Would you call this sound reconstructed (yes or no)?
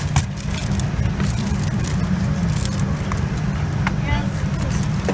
no